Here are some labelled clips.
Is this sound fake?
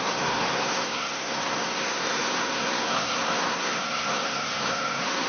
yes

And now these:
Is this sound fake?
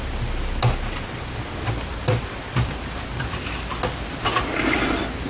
no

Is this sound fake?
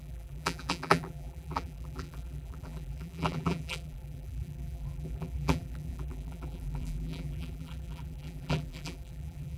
yes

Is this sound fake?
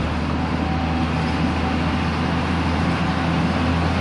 no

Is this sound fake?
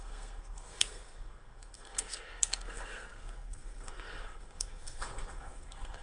yes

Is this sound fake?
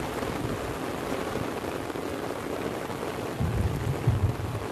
no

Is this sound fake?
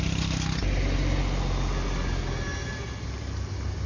no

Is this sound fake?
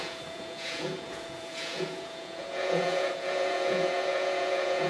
yes